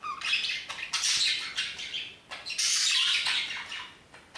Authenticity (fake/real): real